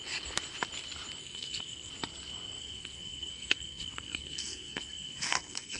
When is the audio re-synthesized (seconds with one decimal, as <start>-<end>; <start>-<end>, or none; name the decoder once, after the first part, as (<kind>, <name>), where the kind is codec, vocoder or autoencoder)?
1.2-1.9 (codec, SNAC); 2.6-5.8